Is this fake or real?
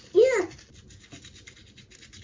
real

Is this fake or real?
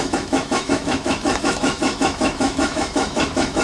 fake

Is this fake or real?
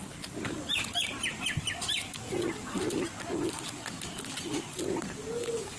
real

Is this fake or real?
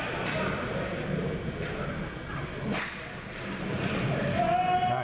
real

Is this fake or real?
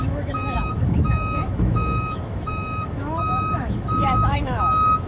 fake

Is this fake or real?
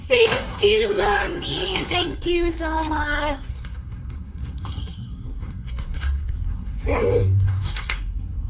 fake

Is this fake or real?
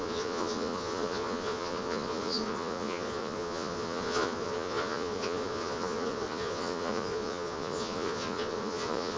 fake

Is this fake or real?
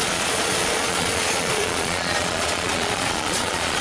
fake